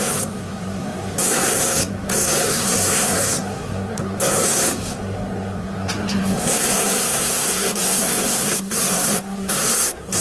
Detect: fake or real fake